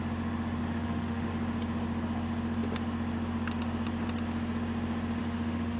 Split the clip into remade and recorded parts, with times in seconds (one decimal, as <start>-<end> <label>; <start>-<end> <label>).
0.0-0.6 recorded; 0.6-1.3 remade; 1.3-5.2 recorded; 5.2-5.8 remade